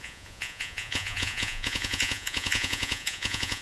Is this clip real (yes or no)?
no